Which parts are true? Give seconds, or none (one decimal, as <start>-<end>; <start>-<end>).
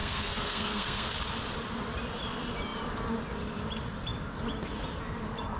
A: 1.1-5.6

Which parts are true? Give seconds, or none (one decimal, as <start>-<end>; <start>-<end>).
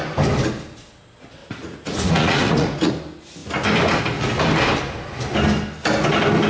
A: 0.0-1.4; 2.9-6.5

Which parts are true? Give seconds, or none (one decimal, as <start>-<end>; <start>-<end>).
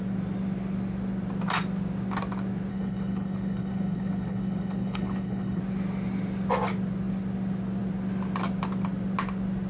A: 0.0-2.7; 5.6-9.7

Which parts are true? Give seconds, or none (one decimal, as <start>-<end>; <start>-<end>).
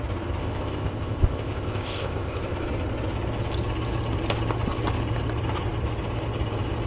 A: 0.0-0.4; 2.4-6.9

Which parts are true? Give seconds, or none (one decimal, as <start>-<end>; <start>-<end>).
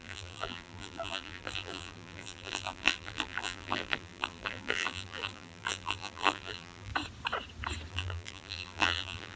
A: 6.9-7.9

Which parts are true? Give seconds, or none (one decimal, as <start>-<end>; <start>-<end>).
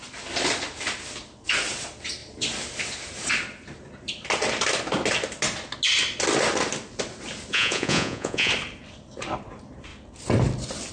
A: 0.0-7.5; 8.5-10.9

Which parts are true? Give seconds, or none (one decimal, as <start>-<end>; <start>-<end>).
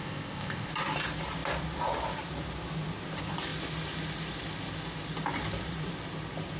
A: 0.7-6.6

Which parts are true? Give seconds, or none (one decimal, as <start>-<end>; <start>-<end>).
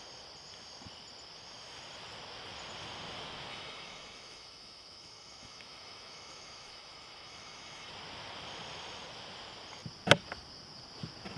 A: 0.0-3.5; 7.9-11.4